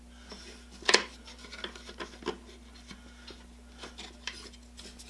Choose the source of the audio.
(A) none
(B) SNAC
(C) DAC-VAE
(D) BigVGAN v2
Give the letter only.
A